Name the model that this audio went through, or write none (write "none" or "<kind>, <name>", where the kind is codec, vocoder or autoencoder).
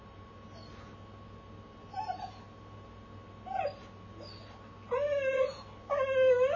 none